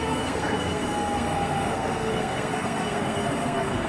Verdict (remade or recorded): remade